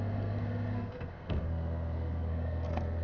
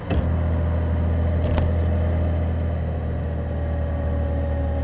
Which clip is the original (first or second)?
second